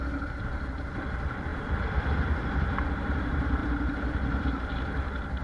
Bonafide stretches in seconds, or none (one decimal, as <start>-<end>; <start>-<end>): 0.0-1.5; 2.4-3.6; 4.4-5.4